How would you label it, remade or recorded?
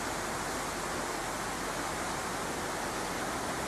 recorded